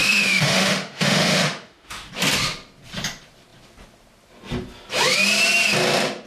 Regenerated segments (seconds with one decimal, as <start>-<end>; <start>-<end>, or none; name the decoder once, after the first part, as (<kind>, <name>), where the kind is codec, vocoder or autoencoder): 0.0-2.1 (autoencoder, DAC-VAE)